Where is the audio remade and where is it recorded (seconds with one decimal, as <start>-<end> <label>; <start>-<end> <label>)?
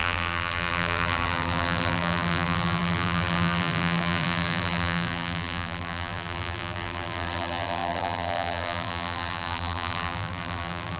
0.0-11.0 remade